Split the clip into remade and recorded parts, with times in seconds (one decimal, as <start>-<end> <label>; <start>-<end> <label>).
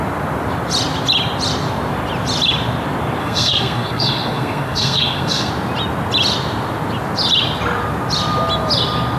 0.0-3.2 recorded; 3.2-5.5 remade; 5.5-9.2 recorded